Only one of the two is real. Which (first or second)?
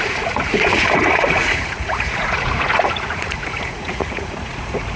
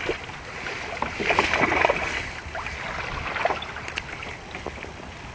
second